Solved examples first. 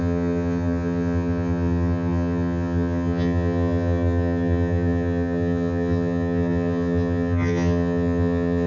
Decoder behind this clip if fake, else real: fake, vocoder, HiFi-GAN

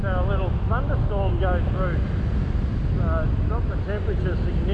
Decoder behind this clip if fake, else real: real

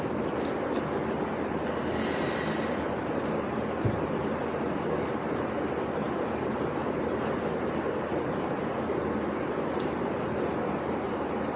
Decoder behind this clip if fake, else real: real